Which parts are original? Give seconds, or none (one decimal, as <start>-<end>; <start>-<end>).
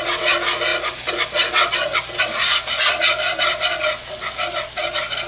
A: 0.0-5.3